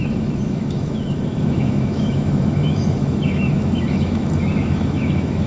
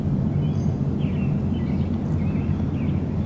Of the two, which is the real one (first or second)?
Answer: second